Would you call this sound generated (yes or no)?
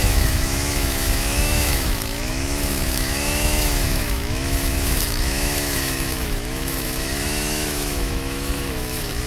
yes